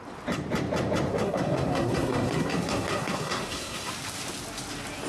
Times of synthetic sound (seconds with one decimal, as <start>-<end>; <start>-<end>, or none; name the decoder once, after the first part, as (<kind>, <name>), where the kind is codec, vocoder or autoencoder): 1.1-3.9 (codec, SNAC)